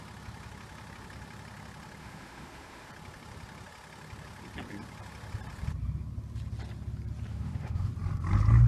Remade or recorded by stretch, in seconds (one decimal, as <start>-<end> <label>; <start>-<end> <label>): 0.0-2.0 recorded; 2.0-2.9 remade; 2.9-7.3 recorded; 7.3-7.9 remade; 7.9-8.7 recorded